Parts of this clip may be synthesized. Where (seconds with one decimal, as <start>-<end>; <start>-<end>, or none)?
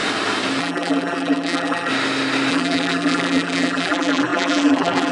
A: 0.6-1.9; 2.5-5.1